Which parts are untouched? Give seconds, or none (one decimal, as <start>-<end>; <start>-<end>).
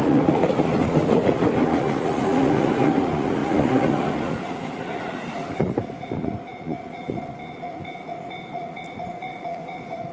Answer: none